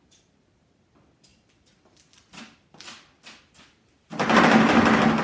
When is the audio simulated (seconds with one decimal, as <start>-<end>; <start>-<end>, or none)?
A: none